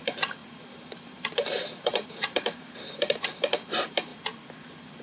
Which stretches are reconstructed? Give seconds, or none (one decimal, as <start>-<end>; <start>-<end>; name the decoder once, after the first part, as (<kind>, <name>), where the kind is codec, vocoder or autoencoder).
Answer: 0.0-4.1 (vocoder, BigVGAN v2)